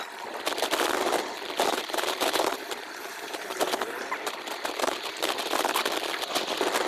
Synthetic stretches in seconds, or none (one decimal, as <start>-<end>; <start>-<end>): 1.7-5.3